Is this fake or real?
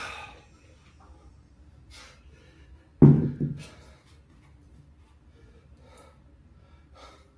real